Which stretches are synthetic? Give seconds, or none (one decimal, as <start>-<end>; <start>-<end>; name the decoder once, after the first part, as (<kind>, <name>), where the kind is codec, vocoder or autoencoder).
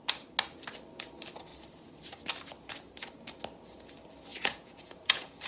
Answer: 4.3-5.5 (vocoder, Vocos)